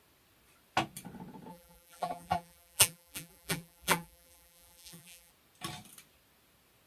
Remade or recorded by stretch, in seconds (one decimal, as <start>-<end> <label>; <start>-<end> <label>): 0.0-1.5 recorded; 1.5-5.3 remade; 5.3-6.9 recorded